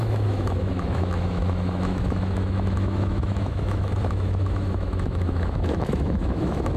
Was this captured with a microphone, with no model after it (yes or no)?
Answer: no